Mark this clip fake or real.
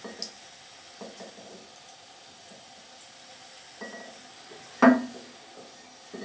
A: real